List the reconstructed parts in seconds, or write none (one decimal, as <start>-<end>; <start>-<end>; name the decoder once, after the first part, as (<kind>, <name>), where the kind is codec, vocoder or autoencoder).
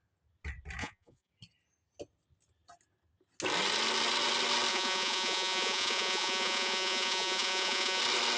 0.8-1.3 (vocoder, Vocos); 4.7-8.0